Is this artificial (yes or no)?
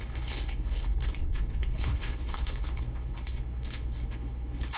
yes